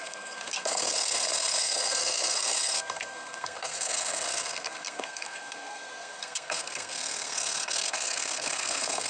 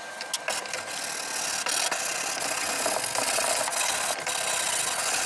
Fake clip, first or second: first